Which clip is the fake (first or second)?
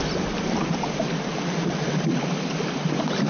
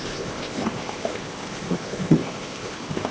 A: second